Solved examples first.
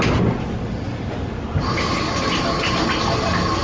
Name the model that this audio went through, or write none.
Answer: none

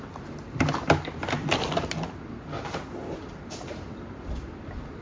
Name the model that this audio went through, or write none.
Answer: none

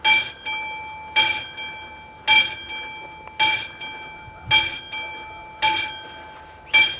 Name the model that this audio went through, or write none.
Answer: none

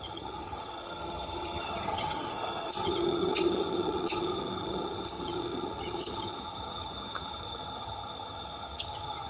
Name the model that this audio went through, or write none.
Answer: vocoder, HiFi-GAN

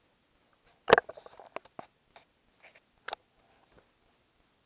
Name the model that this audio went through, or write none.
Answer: none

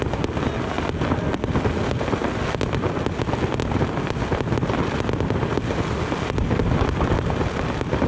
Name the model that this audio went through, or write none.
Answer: none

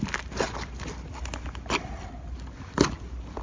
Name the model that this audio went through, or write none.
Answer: none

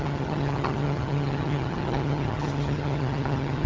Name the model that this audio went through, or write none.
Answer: vocoder, HiFi-GAN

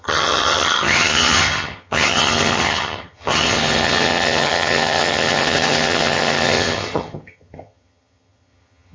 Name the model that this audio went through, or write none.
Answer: vocoder, HiFi-GAN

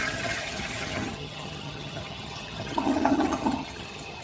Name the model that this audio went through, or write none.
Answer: vocoder, HiFi-GAN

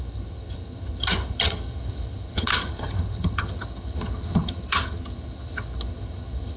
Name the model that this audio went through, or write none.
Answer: vocoder, HiFi-GAN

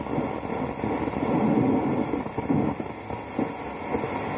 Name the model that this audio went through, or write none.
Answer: none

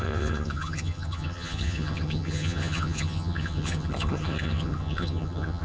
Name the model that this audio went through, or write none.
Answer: vocoder, HiFi-GAN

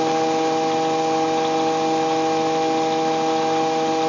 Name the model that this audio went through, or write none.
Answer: none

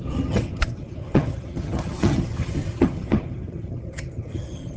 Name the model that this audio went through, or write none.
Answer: vocoder, HiFi-GAN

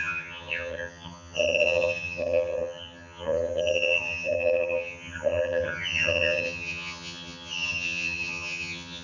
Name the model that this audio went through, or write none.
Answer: vocoder, HiFi-GAN